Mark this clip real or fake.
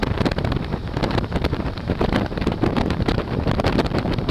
fake